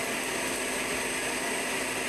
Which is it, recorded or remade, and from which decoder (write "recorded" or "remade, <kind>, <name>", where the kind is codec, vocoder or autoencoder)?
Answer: recorded